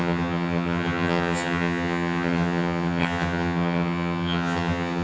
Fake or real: fake